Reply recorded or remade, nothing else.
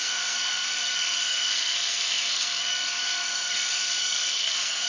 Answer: remade